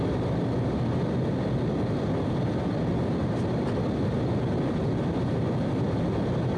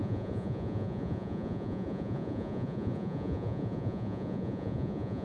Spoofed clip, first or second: second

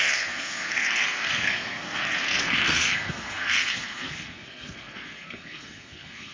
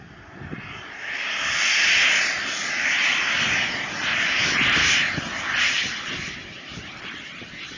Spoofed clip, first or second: first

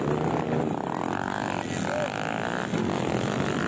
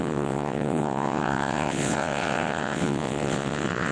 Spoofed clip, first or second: second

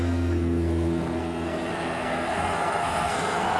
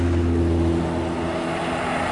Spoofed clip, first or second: first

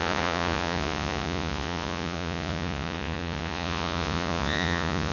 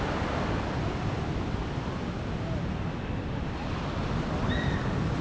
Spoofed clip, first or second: first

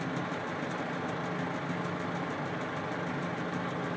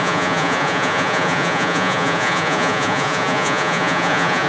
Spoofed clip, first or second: second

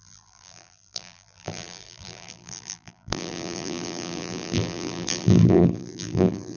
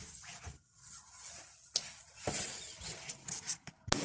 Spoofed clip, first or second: first